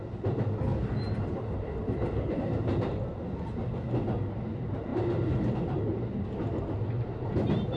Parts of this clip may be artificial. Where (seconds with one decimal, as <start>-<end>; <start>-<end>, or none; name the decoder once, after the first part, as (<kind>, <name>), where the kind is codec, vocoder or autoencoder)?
0.7-3.0 (vocoder, BigVGAN v2); 4.9-5.8